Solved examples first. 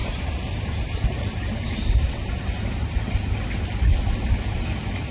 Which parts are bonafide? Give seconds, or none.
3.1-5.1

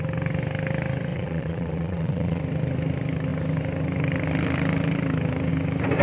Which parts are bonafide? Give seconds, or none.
0.0-1.1; 2.4-6.0

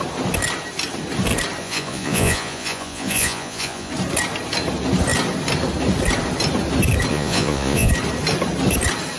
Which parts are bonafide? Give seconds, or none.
0.0-1.6; 3.9-7.1; 7.9-9.2